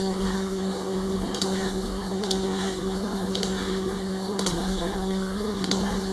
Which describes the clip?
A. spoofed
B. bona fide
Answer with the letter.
A